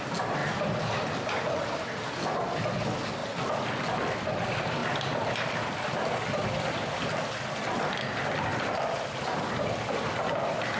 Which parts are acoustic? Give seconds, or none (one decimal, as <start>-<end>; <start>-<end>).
0.0-0.4; 1.4-8.5; 9.2-10.8